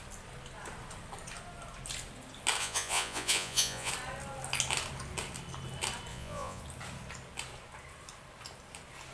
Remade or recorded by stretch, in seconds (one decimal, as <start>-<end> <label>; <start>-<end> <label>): 0.0-2.6 recorded; 2.6-3.9 remade; 3.9-6.1 recorded; 6.1-6.6 remade; 6.6-9.1 recorded